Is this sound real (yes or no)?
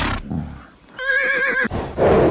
yes